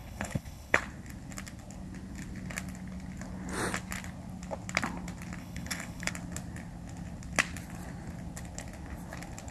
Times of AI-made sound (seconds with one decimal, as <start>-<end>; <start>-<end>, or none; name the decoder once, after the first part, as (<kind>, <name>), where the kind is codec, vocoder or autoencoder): 0.0-0.8 (codec, HILCodec); 5.4-6.1

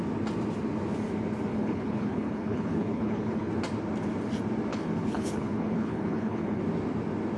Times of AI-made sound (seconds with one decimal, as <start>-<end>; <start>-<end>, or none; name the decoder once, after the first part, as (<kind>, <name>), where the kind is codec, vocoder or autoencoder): 1.5-3.5 (codec, HILCodec); 4.7-6.6

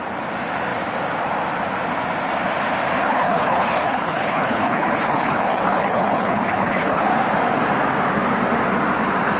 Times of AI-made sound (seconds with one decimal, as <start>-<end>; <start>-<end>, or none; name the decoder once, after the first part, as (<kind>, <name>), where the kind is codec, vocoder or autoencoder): 3.0-7.1 (codec, HILCodec)